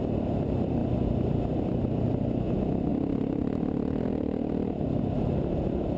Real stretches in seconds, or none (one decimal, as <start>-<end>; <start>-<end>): 0.8-1.3